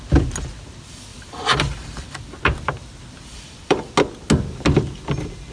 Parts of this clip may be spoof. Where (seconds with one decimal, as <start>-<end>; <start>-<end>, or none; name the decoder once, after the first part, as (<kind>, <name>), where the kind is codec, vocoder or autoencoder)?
1.1-2.4 (vocoder, BigVGAN v2); 3.3-3.9